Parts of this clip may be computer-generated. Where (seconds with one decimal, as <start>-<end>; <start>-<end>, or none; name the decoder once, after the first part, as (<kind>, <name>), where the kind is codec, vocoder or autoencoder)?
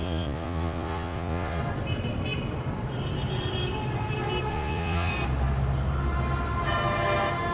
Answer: 0.0-1.6 (vocoder, Vocos); 4.5-5.1